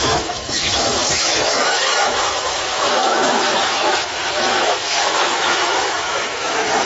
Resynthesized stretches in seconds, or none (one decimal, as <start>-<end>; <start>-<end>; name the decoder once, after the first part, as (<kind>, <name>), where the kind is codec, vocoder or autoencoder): 0.0-6.9 (autoencoder, DAC-VAE)

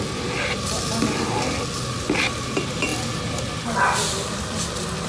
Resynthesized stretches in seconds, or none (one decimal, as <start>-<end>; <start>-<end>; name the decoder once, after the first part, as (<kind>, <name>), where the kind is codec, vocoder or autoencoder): none

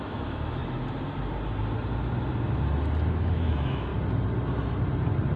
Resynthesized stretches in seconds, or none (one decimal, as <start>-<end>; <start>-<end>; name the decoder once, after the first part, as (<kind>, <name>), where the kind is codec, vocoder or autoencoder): 0.0-0.6 (autoencoder, DAC-VAE); 3.1-3.9

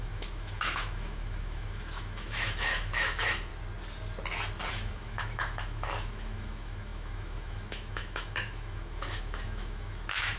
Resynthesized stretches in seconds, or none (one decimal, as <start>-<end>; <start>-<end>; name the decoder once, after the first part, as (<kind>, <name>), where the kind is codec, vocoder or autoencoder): 0.0-3.5 (autoencoder, DAC-VAE); 4.7-10.4

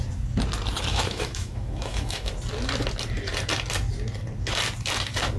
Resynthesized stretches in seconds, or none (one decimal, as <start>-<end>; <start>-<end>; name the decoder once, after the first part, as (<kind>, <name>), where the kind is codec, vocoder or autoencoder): 0.9-2.3 (autoencoder, DAC-VAE)